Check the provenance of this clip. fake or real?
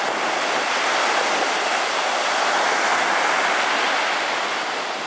real